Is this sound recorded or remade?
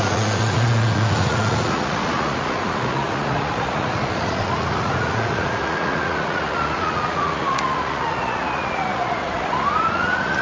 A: remade